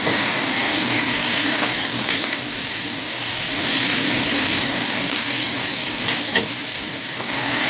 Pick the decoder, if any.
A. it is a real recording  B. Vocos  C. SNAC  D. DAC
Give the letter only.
D